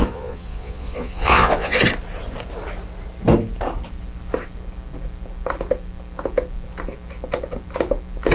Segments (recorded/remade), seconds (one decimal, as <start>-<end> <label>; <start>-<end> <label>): 0.0-1.8 remade; 1.8-8.3 recorded